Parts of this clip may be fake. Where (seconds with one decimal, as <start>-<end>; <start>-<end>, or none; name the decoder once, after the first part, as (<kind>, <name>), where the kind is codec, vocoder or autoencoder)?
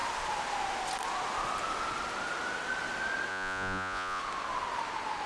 3.3-4.2 (vocoder, Vocos)